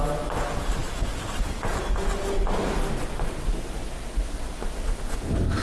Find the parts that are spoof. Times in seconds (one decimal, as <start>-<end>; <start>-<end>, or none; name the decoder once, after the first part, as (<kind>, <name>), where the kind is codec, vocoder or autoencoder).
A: none